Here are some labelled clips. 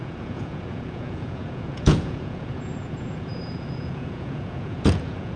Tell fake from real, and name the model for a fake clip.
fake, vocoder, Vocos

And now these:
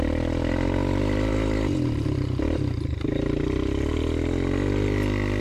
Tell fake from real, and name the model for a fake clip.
real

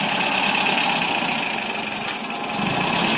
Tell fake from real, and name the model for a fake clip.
real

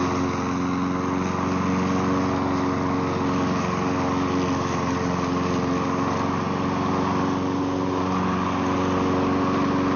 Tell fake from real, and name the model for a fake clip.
real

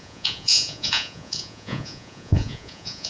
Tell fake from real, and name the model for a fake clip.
fake, vocoder, Vocos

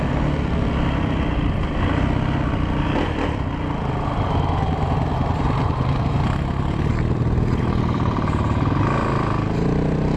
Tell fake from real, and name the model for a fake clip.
real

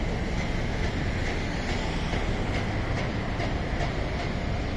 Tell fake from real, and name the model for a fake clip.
real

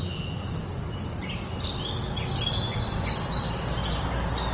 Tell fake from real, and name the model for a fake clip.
real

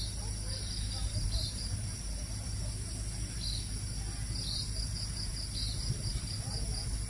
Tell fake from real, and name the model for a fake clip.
real